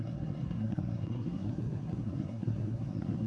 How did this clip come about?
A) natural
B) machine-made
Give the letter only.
B